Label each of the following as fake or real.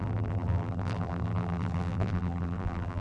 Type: fake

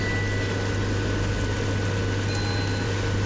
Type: real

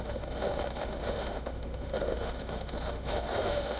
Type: fake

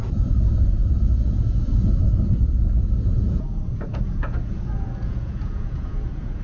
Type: fake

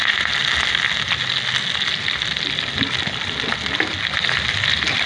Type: real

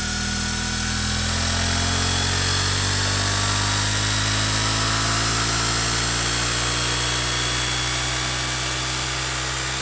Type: real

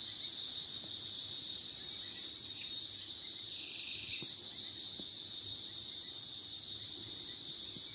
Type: real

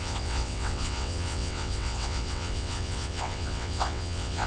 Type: fake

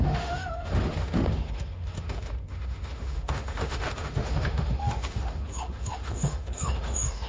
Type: fake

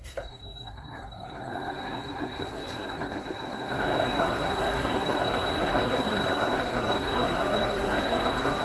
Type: fake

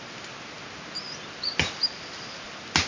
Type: real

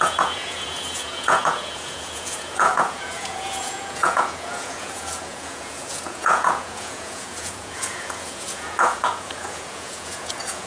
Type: fake